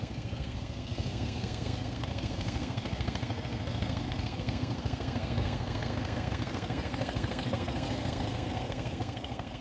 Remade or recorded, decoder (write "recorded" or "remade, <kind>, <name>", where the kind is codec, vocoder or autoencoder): remade, codec, SNAC